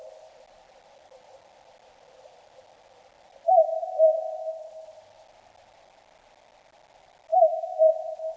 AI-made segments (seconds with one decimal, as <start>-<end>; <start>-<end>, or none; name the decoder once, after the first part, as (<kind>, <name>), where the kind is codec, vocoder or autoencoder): 7.3-7.9 (autoencoder, DAC-VAE)